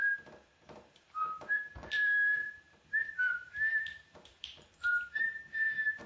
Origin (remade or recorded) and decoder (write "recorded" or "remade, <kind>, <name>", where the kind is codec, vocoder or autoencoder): remade, vocoder, BigVGAN v2